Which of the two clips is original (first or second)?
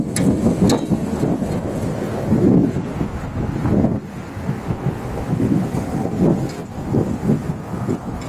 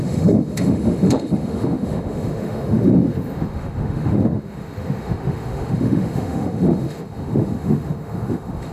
first